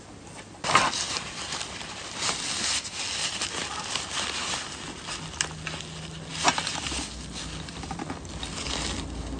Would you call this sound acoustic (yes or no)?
yes